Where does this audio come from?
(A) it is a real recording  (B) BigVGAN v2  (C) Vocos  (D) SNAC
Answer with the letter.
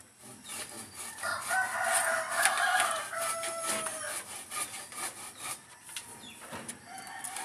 A